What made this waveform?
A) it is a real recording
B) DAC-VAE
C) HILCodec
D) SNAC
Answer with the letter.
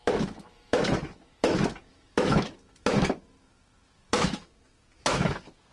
B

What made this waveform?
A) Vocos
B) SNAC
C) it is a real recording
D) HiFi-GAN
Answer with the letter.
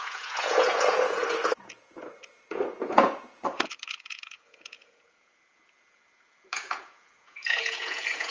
A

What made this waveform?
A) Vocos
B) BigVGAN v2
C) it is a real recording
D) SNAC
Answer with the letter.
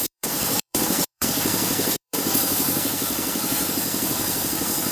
D